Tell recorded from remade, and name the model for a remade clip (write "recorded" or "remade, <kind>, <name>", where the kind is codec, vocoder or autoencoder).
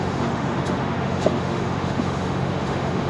remade, autoencoder, DAC-VAE